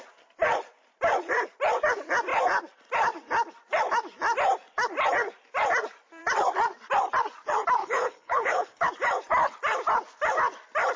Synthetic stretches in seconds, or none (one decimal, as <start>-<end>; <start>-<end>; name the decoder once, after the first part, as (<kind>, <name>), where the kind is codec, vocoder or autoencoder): 7.8-8.9 (codec, HILCodec)